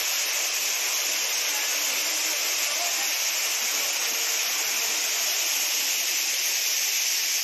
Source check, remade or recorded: recorded